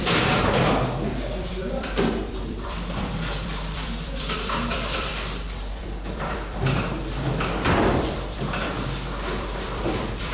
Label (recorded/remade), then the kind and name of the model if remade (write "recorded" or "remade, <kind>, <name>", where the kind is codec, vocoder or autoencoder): remade, vocoder, BigVGAN v2